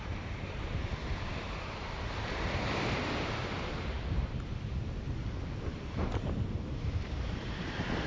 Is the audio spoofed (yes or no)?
yes